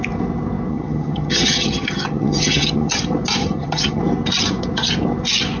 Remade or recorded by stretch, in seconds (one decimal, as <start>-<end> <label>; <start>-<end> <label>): 0.0-0.7 recorded; 0.7-3.0 remade; 3.0-3.4 recorded; 3.4-4.0 remade; 4.0-5.6 recorded